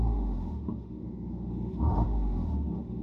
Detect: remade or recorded remade